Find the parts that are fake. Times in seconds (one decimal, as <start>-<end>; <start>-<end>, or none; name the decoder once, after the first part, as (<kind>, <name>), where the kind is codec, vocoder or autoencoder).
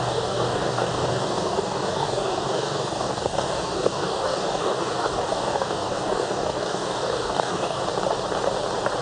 0.0-7.8 (codec, DAC)